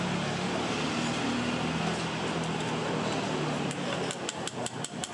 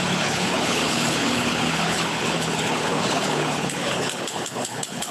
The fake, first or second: second